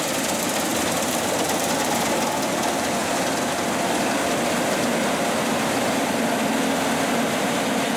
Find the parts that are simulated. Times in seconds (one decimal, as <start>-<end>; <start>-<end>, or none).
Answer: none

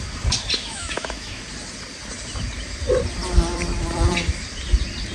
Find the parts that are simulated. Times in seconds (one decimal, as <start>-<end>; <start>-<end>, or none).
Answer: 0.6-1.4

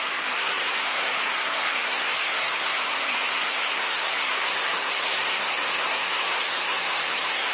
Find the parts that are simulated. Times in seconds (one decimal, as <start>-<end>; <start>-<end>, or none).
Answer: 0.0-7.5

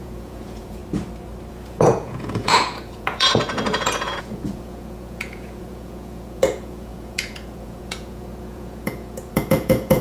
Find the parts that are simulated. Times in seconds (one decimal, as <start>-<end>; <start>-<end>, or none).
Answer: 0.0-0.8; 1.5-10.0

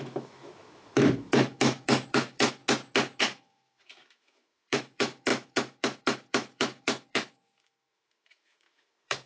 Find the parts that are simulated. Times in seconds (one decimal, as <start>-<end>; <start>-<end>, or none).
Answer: 0.0-2.6; 3.2-9.3

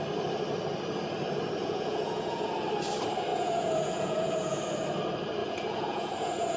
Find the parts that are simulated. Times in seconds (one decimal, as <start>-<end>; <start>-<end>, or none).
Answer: 1.6-2.7; 3.3-4.6; 5.4-6.6

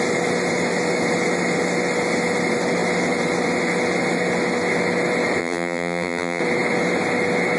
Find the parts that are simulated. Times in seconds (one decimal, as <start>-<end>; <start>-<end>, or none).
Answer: 5.4-6.4